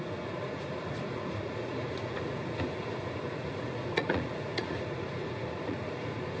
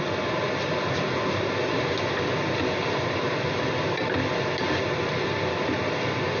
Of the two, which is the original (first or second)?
second